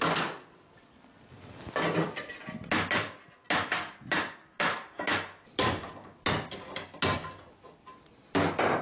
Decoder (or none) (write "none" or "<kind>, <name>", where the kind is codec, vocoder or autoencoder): none